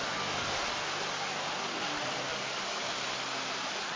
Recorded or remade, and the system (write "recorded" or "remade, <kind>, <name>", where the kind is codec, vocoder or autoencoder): recorded